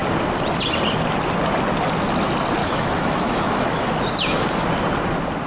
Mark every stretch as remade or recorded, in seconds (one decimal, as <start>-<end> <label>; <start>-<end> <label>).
0.0-2.6 recorded; 2.6-3.9 remade; 3.9-5.5 recorded